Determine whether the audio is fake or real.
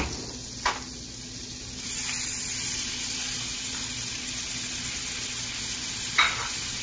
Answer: real